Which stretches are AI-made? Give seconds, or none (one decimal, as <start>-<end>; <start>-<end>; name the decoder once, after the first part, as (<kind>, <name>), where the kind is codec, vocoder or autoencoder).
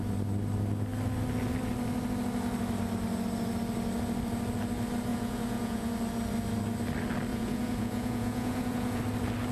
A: 5.1-5.9 (vocoder, Vocos); 7.3-9.0